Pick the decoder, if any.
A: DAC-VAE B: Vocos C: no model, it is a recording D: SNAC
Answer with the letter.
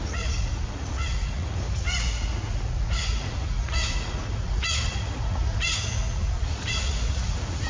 B